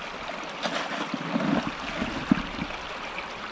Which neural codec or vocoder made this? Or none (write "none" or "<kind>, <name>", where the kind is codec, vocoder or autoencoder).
none